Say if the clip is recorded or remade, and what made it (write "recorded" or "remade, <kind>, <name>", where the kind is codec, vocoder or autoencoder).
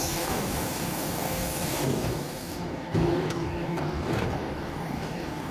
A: remade, codec, DAC